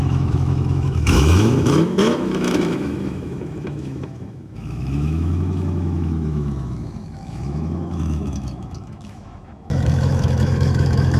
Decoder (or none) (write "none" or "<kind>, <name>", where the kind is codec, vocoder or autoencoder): autoencoder, DAC-VAE